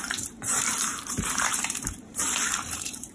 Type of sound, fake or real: fake